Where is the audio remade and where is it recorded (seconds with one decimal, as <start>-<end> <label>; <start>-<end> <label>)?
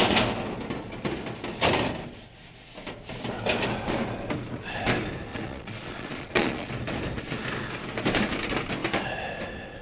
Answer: 0.0-5.3 recorded; 5.3-6.7 remade; 6.7-9.8 recorded